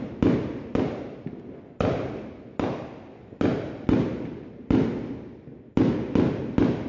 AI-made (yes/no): no